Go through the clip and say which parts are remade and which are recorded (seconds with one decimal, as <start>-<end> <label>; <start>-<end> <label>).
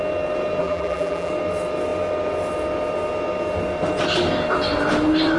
0.0-0.6 recorded; 0.6-1.3 remade; 1.3-5.4 recorded